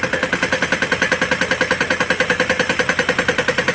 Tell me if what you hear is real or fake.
real